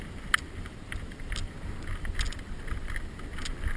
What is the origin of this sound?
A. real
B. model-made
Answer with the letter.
A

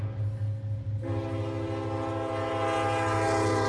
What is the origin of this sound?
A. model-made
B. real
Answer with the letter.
B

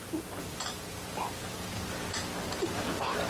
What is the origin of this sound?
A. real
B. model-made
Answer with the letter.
A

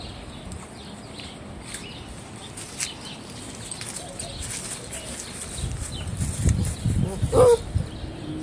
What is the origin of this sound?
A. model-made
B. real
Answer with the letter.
B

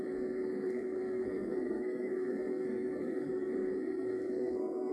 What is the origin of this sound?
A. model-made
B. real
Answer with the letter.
A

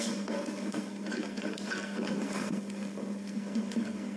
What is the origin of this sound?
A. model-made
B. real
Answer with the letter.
A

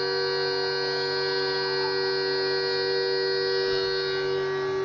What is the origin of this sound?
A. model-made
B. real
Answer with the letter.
B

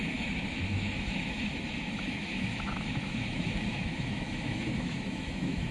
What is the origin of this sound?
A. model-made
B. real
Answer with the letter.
A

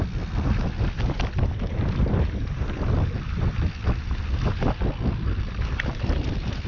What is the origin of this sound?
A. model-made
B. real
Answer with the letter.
B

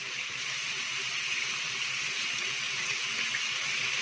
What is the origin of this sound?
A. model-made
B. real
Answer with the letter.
A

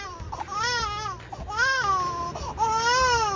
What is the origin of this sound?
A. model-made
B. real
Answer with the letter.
B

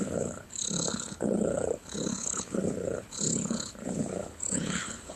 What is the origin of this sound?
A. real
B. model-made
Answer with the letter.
B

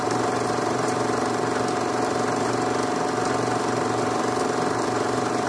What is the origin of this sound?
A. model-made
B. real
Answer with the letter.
A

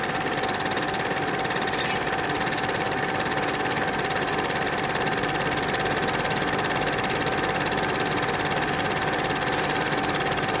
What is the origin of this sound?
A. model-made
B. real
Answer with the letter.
B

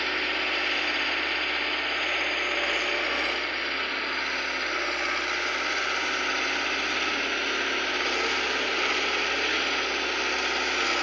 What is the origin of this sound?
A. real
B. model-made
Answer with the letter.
A